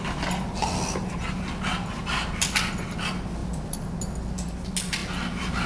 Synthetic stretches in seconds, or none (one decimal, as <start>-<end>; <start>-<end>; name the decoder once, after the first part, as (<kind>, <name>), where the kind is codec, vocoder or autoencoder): none